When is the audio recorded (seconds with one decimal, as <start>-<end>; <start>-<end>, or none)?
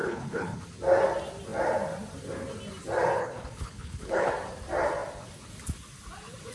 0.6-3.2; 4.3-6.5